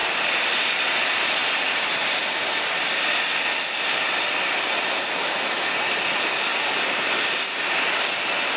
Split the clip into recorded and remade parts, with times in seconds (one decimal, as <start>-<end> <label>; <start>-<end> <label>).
0.0-0.6 remade; 0.6-8.6 recorded

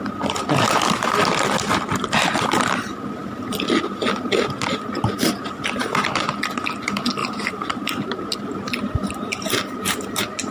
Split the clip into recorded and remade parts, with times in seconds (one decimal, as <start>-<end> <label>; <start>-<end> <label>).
0.0-7.2 recorded; 7.2-10.5 remade